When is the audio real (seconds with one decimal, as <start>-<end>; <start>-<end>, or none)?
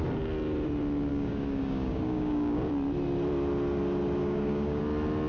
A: 0.0-1.1; 2.7-4.2; 4.8-5.3